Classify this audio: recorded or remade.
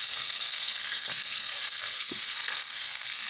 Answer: remade